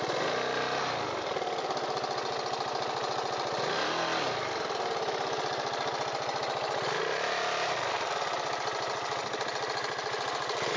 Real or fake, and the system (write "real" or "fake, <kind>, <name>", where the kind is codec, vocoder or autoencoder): real